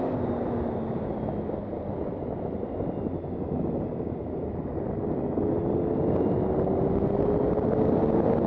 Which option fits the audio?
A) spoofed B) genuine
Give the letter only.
B